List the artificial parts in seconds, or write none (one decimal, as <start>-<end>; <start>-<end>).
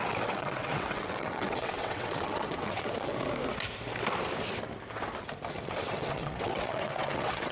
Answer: 0.0-3.1; 5.6-7.5